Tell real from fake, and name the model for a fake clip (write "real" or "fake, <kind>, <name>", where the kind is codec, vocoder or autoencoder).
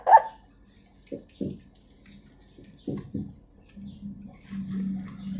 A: real